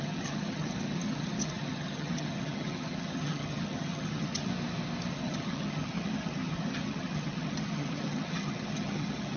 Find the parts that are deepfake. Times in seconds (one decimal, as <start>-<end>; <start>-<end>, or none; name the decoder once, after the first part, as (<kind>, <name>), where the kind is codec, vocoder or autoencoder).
0.0-4.5 (vocoder, HiFi-GAN); 5.1-9.4